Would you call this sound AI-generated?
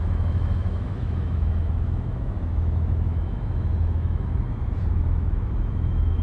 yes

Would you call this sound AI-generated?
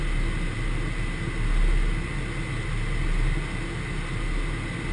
no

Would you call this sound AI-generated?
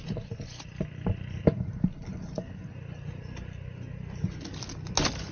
no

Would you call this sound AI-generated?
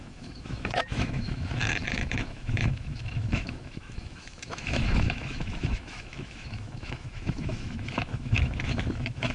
yes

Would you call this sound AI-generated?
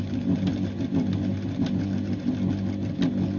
no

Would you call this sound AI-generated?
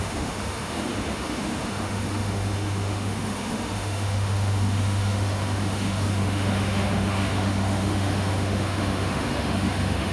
yes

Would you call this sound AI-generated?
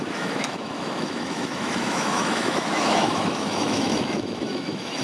yes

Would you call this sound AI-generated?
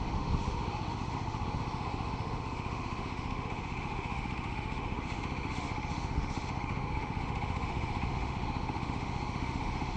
yes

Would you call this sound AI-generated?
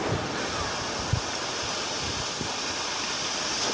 no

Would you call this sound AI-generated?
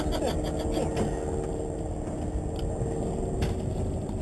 no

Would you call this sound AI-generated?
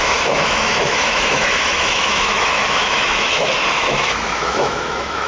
yes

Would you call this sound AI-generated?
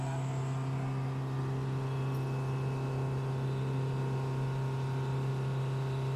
no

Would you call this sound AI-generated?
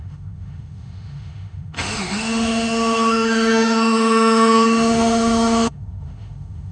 yes